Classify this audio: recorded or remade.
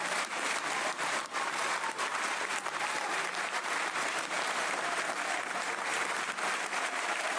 remade